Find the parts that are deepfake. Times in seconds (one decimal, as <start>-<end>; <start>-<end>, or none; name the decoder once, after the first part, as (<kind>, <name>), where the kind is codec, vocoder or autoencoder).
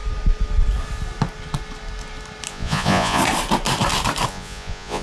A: 2.5-3.2 (vocoder, Vocos); 4.3-5.0